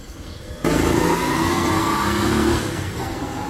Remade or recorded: remade